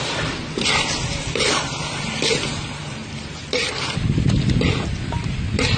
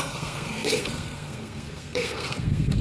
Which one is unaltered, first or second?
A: first